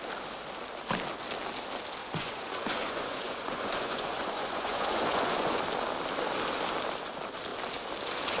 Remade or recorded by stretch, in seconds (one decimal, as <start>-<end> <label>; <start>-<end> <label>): 0.0-2.0 recorded; 2.0-5.6 remade; 5.6-8.4 recorded